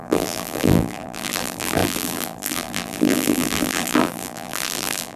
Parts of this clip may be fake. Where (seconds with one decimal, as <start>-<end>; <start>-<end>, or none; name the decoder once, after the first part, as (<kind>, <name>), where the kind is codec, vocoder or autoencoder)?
0.0-5.2 (vocoder, BigVGAN v2)